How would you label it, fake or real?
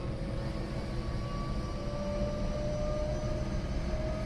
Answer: real